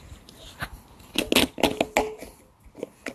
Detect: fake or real real